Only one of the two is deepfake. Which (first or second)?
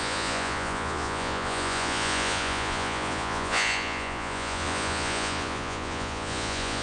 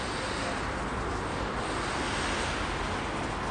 first